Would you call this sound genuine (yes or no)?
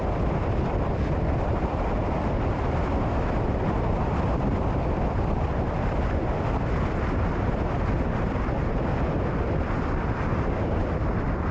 yes